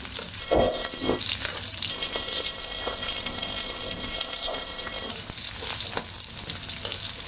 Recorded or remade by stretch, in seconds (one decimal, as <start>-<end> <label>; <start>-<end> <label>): 0.0-0.4 recorded; 0.4-1.2 remade; 1.2-1.9 recorded; 1.9-5.1 remade; 5.1-7.3 recorded